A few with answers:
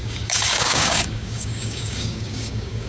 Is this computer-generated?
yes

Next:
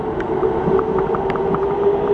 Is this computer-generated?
no